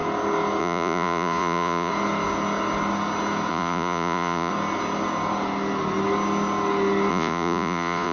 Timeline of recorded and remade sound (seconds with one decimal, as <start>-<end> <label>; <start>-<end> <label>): 0.0-0.6 recorded; 0.6-1.9 remade; 1.9-3.5 recorded; 3.5-4.5 remade; 4.5-7.1 recorded; 7.1-8.1 remade